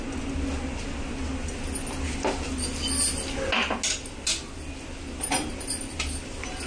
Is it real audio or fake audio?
real